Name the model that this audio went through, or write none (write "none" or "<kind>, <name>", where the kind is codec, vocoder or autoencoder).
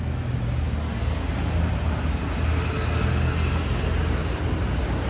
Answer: none